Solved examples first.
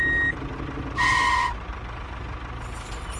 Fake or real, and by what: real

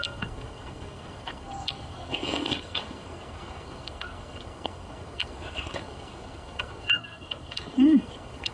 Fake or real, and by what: fake, codec, SNAC